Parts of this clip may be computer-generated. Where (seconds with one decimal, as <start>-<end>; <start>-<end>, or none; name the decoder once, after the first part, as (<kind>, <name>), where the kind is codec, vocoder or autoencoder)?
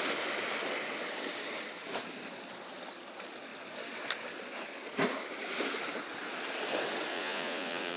7.1-8.0 (vocoder, Vocos)